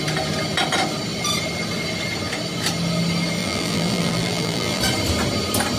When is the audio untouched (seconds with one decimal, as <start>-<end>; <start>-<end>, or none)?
0.0-3.4; 4.8-5.8